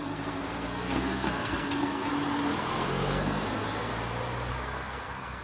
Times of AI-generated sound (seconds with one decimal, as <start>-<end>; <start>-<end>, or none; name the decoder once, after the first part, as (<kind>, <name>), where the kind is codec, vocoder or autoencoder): 0.0-2.1 (codec, SNAC); 2.6-3.9; 4.5-5.4